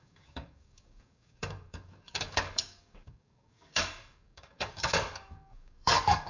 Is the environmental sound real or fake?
fake